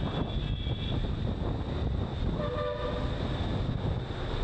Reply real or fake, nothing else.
real